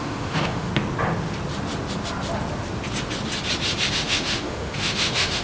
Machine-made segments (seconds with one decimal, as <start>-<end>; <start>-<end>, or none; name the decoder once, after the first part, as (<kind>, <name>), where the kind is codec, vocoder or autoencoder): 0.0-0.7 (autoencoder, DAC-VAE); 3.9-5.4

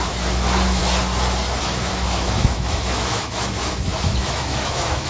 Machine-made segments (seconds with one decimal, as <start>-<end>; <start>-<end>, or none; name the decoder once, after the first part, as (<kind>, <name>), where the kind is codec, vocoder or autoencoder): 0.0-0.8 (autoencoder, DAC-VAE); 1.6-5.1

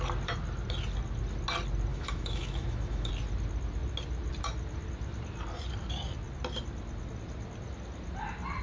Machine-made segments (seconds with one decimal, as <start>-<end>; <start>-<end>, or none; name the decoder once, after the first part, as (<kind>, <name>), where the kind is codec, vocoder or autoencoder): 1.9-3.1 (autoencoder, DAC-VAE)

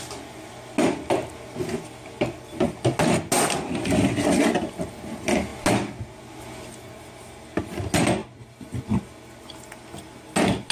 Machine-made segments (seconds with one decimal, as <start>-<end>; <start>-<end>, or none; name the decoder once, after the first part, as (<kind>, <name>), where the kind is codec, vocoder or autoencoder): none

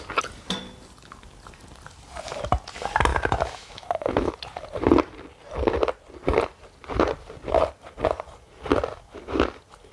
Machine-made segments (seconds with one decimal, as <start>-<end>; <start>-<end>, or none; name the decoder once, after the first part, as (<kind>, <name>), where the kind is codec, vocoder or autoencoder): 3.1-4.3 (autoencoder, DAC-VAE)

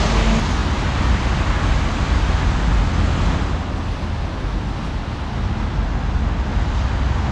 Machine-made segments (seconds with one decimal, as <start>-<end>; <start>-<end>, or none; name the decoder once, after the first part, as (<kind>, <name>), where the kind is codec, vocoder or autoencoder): none

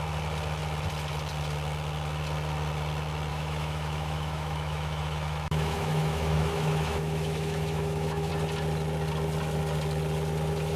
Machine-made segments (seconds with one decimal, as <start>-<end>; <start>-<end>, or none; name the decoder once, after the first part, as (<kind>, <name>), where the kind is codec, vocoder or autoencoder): 3.3-8.3 (autoencoder, DAC-VAE)

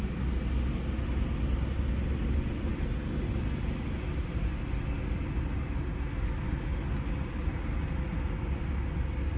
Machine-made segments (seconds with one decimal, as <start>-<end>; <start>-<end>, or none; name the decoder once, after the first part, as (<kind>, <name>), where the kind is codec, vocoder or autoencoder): none